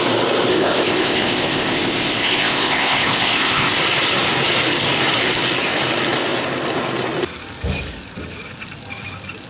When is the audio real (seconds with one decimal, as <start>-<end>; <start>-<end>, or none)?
0.0-0.5; 3.8-9.5